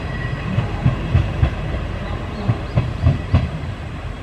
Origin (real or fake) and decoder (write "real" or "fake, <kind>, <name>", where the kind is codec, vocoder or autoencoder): fake, vocoder, BigVGAN v2